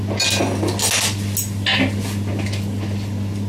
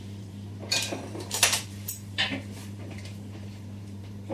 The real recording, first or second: first